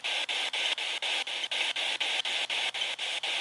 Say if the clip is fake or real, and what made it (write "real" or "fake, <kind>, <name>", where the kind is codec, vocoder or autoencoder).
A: real